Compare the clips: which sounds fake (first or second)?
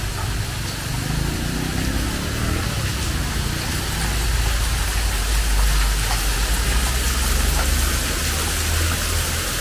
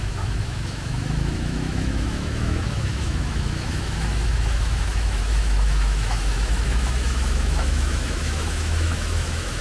second